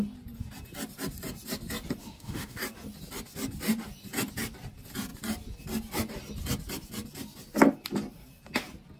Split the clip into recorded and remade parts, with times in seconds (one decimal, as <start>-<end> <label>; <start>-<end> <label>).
0.0-2.0 recorded; 2.0-2.6 remade; 2.6-9.0 recorded